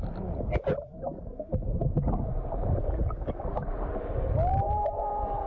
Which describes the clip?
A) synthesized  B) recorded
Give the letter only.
B